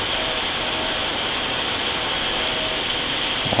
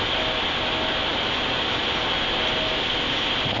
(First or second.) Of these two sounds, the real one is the second